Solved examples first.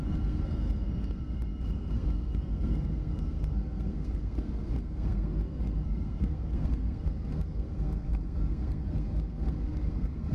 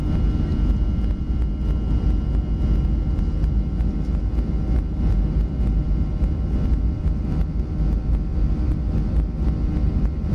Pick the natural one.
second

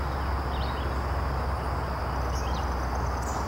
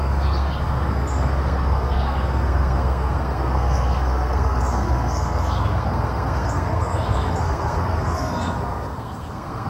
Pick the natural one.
first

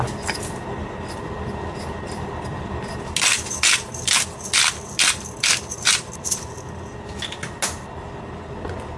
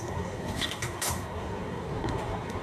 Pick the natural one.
first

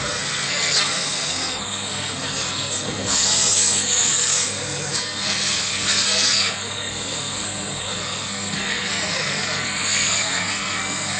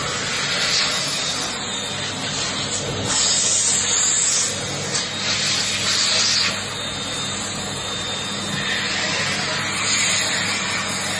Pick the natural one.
second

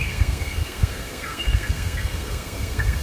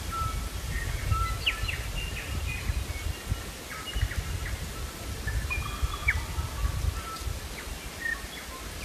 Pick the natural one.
second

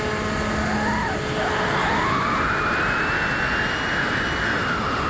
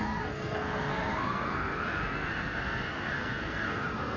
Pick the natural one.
first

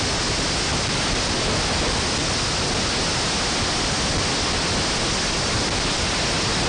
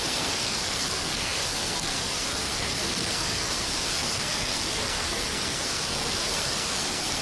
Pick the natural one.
first